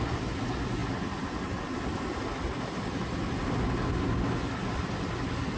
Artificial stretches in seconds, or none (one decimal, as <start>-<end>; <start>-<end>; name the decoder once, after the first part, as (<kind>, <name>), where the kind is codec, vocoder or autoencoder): none